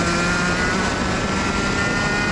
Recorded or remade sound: recorded